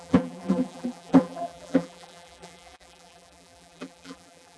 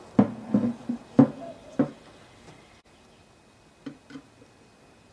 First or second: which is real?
second